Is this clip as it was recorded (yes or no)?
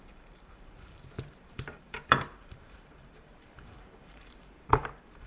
no